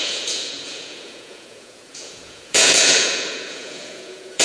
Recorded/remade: remade